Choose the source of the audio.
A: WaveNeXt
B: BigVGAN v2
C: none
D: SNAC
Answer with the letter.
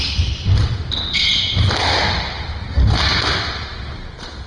C